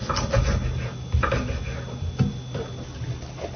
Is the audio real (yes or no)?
yes